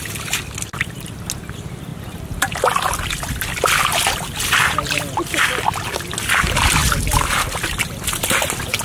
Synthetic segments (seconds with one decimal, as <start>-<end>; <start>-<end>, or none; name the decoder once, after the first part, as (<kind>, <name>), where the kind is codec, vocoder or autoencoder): 6.8-8.0 (vocoder, BigVGAN v2)